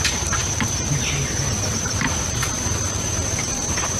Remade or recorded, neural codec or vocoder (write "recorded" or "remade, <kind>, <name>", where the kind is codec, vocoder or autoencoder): remade, vocoder, BigVGAN v2